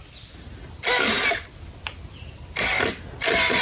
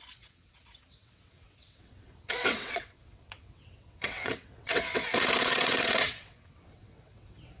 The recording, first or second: first